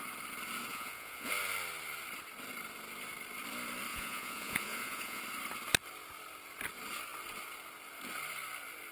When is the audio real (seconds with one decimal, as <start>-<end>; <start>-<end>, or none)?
0.0-0.7; 1.3-3.9; 5.2-8.9